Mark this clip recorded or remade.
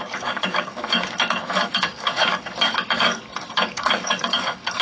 remade